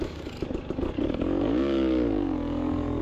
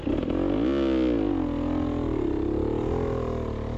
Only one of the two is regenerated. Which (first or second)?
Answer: first